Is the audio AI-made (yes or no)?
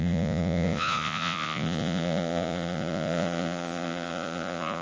yes